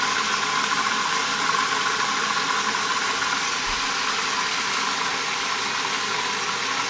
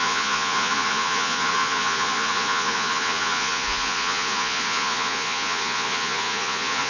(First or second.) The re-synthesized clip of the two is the second